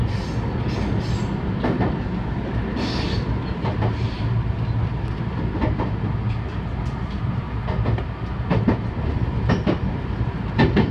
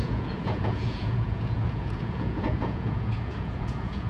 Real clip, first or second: first